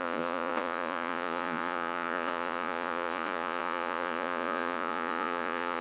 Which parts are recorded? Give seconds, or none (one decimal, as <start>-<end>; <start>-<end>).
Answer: none